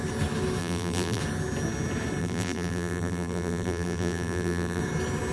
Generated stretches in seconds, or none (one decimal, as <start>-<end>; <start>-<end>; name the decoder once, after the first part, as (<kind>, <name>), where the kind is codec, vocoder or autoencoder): 0.6-1.2 (vocoder, BigVGAN v2); 2.2-4.8